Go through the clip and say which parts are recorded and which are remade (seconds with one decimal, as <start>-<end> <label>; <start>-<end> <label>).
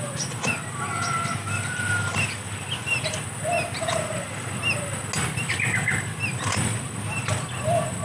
0.0-8.0 recorded